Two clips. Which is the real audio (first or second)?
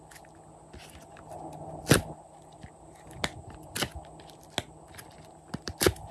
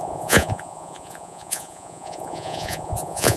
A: first